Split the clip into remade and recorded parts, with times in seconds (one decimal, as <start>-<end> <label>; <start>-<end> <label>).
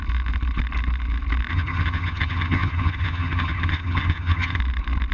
0.0-1.5 recorded; 1.5-4.6 remade; 4.6-5.1 recorded